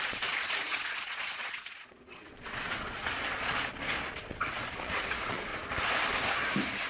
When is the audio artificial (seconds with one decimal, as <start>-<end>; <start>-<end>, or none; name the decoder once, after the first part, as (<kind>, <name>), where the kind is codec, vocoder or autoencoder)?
0.0-3.5 (vocoder, Vocos); 4.2-5.5